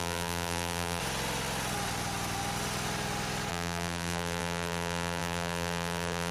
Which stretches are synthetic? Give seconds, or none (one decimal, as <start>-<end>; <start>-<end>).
0.0-1.0; 3.5-6.3